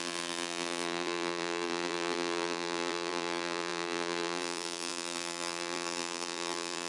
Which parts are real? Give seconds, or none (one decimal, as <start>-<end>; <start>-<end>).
none